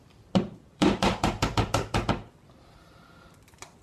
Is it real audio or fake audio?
fake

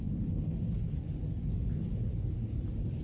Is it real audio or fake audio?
real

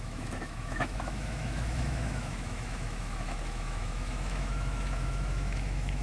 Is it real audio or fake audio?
fake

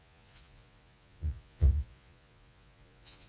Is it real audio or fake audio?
fake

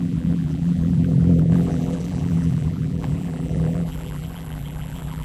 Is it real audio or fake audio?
fake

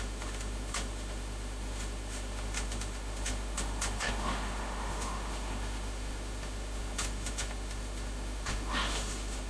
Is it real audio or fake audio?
fake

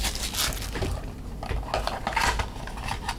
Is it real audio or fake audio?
real